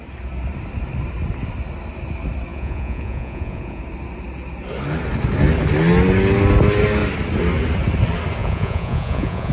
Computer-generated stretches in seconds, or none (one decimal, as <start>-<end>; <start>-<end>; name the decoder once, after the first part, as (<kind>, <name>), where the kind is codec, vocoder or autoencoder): 2.5-3.8 (vocoder, Vocos); 8.4-9.5